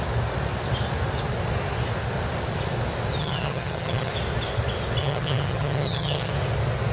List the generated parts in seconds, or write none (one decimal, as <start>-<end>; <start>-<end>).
3.2-4.1; 5.0-6.3